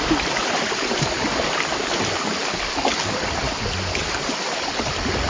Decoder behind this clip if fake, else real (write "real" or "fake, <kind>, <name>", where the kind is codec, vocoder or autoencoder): real